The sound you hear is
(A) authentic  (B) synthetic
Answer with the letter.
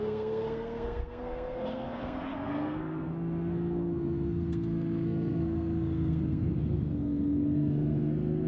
B